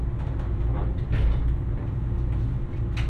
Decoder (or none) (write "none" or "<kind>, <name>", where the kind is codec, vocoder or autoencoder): none